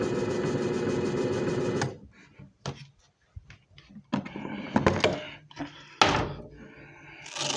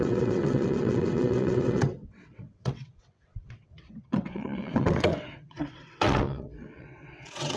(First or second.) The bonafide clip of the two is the first